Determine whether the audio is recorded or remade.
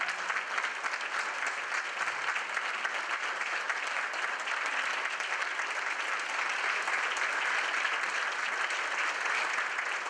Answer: recorded